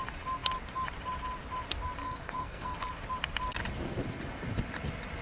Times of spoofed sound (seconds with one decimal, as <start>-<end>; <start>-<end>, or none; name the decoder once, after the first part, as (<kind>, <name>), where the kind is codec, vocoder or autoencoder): 2.0-2.9 (codec, SNAC)